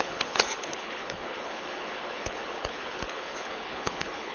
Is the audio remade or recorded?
remade